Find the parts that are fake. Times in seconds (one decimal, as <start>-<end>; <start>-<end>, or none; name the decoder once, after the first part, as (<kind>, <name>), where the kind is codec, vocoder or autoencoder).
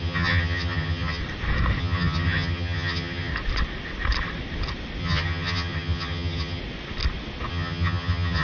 0.0-1.2 (vocoder, HiFi-GAN); 1.8-3.3; 5.0-6.6; 7.5-8.4